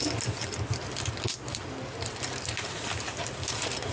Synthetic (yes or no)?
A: no